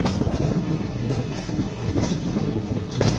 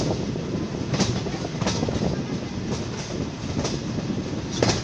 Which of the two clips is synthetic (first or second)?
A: first